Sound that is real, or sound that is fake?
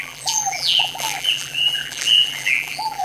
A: fake